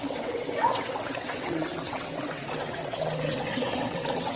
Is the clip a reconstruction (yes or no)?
yes